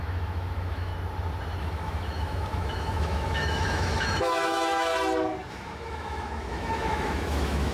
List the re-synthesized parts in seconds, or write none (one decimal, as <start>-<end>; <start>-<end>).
0.0-0.9; 1.6-4.9; 5.5-7.7